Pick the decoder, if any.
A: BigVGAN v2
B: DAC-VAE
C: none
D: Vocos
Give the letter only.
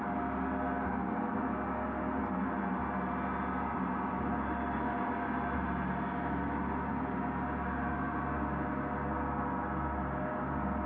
C